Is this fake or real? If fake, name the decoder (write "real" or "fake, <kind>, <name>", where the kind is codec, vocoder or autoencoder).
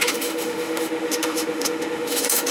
fake, autoencoder, DAC-VAE